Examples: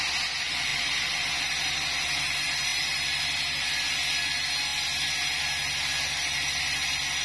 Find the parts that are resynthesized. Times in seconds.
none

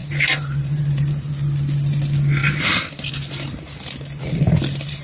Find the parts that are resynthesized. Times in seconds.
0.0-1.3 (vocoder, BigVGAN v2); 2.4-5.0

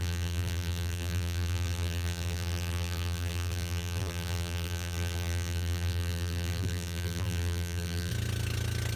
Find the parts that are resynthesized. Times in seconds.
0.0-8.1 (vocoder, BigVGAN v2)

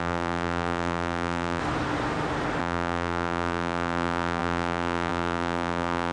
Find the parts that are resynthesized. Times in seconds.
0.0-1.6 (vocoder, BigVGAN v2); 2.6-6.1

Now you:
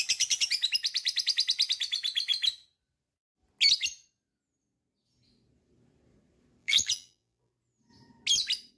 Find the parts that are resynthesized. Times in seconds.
6.6-7.5 (vocoder, BigVGAN v2)

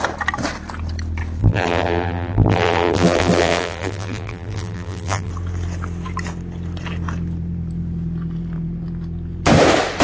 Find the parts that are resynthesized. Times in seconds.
1.4-5.3 (vocoder, BigVGAN v2)

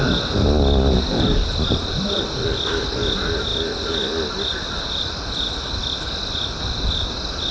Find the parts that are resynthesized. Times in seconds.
0.0-2.9 (vocoder, BigVGAN v2)